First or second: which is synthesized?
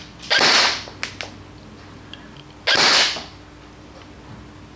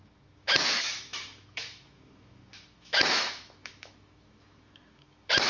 second